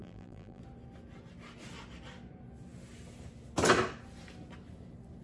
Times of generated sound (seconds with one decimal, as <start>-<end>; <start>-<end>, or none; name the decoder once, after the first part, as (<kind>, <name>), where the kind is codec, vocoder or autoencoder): 0.0-0.6 (vocoder, BigVGAN v2)